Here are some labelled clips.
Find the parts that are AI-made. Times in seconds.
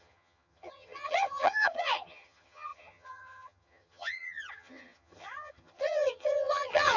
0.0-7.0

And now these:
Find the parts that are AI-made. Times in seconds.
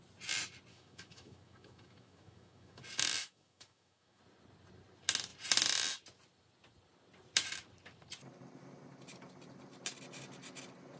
0.7-2.8; 3.2-4.2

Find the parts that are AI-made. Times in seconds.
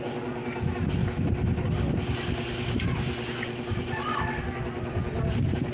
1.0-4.4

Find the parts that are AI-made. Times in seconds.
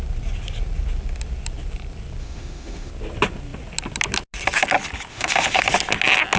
2.2-2.9; 5.1-5.6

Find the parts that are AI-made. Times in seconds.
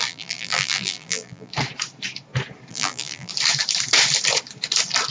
0.0-1.5; 2.7-3.3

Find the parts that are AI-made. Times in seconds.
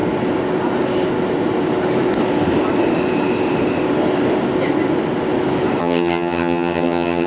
5.8-7.3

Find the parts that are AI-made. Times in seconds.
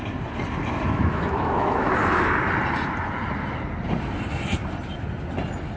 0.9-1.9